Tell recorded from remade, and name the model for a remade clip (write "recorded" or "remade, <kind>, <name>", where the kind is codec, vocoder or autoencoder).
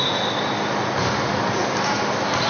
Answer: recorded